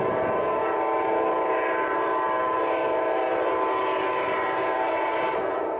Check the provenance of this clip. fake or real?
real